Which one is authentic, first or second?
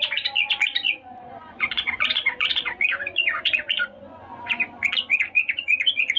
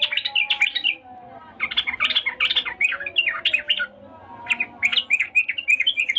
second